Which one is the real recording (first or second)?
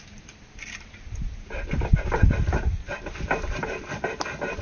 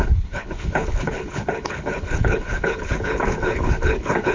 first